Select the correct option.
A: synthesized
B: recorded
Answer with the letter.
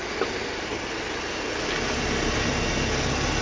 B